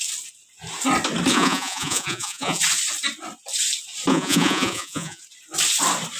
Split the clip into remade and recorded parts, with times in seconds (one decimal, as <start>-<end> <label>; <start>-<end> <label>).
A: 0.0-1.3 recorded; 1.3-2.6 remade; 2.6-4.1 recorded; 4.1-5.2 remade; 5.2-6.2 recorded